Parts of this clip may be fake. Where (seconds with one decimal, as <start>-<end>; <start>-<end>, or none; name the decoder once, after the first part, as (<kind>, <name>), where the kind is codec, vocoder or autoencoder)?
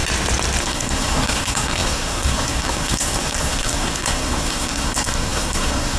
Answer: 0.6-6.0 (codec, SNAC)